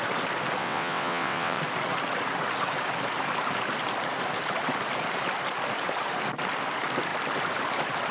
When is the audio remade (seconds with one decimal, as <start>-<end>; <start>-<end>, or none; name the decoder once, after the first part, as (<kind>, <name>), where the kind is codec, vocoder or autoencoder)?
0.6-1.6 (vocoder, WaveNeXt)